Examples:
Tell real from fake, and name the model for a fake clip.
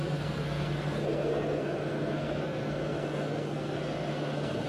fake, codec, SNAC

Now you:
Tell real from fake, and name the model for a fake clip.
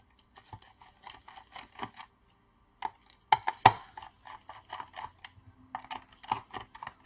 real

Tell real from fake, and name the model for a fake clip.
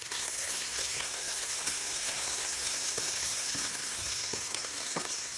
fake, codec, SNAC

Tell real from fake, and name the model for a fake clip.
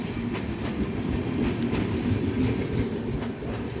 real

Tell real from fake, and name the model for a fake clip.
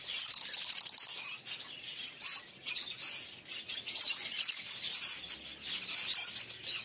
real